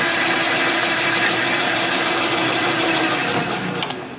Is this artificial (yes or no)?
yes